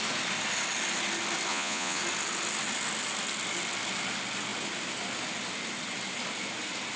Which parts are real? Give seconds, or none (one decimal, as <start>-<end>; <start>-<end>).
0.0-1.5; 2.0-7.0